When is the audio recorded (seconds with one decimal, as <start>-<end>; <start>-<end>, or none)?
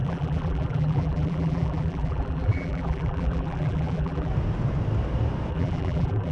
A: 4.3-5.5